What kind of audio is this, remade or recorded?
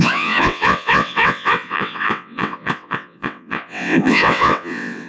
remade